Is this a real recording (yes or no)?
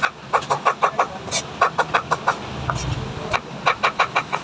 yes